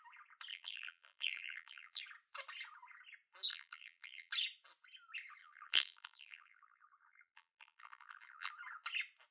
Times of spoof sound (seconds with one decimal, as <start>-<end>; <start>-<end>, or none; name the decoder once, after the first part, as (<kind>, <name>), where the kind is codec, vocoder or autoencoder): 0.5-2.0 (vocoder, BigVGAN v2); 3.5-4.3; 5.4-8.5